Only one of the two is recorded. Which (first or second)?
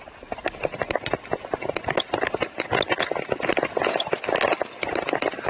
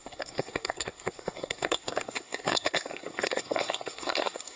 first